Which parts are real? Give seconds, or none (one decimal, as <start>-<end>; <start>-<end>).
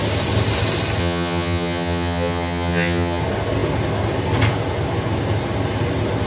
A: 0.0-1.0; 3.2-6.3